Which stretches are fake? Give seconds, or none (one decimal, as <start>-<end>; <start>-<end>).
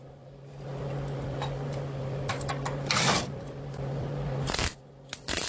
none